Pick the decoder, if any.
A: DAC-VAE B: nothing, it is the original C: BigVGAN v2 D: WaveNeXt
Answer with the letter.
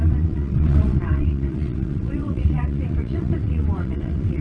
D